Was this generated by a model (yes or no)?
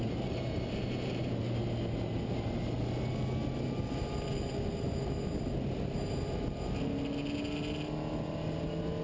no